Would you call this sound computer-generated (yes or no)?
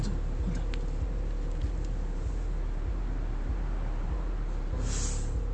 no